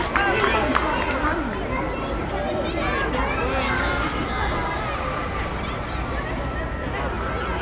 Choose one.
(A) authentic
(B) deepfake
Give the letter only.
A